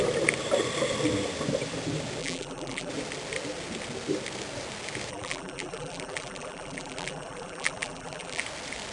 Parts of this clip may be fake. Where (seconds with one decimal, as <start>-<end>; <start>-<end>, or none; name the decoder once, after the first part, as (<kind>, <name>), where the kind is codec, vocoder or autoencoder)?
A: 2.2-2.9 (vocoder, BigVGAN v2); 5.1-8.4